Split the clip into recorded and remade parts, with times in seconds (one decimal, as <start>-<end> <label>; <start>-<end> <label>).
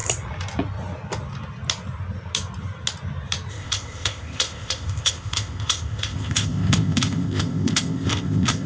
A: 0.0-3.5 recorded; 3.5-8.7 remade